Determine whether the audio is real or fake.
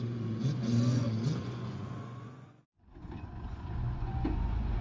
fake